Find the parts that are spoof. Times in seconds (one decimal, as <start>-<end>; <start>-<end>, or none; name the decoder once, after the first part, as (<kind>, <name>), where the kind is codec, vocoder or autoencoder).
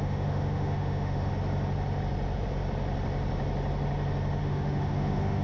0.0-1.3 (autoencoder, DAC-VAE); 4.4-5.4